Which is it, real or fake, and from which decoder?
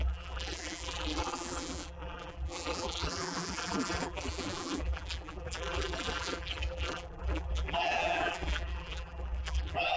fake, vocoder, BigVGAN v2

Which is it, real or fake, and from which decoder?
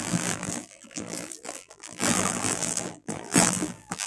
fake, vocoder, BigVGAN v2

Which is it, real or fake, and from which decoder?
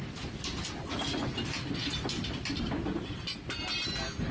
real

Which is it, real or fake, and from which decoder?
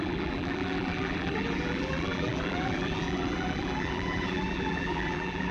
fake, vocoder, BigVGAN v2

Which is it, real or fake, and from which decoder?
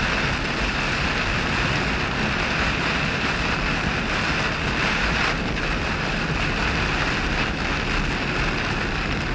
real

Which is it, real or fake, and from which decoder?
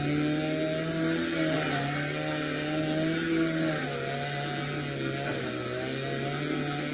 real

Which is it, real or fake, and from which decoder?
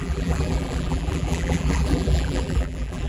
fake, vocoder, BigVGAN v2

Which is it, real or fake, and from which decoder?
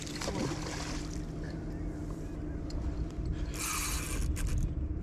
fake, vocoder, BigVGAN v2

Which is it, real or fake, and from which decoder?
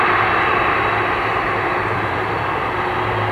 fake, vocoder, BigVGAN v2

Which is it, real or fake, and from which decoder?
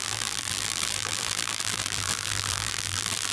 fake, vocoder, BigVGAN v2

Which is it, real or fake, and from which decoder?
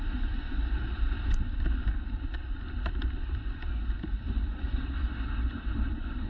fake, vocoder, BigVGAN v2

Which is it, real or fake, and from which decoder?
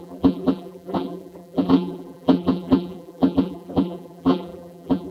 fake, vocoder, BigVGAN v2